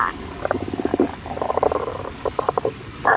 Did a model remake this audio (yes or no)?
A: yes